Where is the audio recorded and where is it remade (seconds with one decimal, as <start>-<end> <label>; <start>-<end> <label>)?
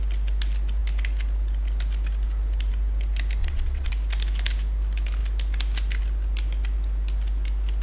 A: 0.0-3.4 recorded; 3.4-3.9 remade; 3.9-7.8 recorded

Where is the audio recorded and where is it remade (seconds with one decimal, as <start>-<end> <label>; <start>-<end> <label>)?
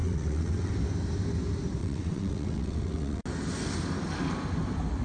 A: 0.0-0.7 remade; 0.7-1.8 recorded; 1.8-3.2 remade; 3.2-5.0 recorded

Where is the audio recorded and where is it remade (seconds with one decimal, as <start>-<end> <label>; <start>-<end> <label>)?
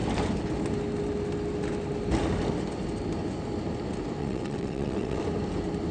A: 0.0-4.2 recorded; 4.2-5.2 remade; 5.2-5.9 recorded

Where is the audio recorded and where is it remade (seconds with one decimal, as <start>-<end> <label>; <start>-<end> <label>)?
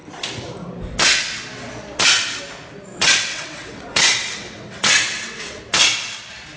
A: 0.0-2.9 recorded; 2.9-5.6 remade; 5.6-6.6 recorded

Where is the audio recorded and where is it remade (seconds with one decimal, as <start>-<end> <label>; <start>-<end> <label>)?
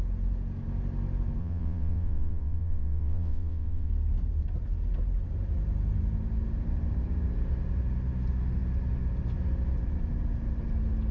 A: 0.0-1.4 recorded; 1.4-3.9 remade; 3.9-11.1 recorded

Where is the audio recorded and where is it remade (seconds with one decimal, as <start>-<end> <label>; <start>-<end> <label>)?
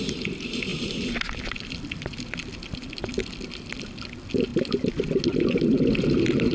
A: 0.0-6.5 recorded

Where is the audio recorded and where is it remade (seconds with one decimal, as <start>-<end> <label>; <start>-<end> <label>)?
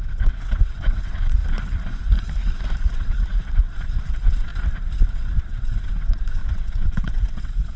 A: 0.0-1.4 remade; 1.4-4.0 recorded; 4.0-4.5 remade; 4.5-5.1 recorded; 5.1-7.8 remade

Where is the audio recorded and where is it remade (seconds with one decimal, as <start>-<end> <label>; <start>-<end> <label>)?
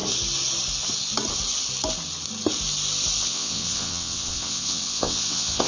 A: 0.0-3.2 recorded; 3.2-5.7 remade